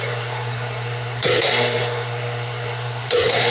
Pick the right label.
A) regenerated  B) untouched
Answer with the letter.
A